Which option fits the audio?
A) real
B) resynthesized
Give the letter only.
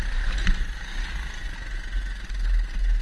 A